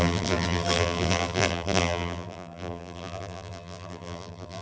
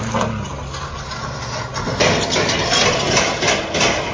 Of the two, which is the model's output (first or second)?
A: first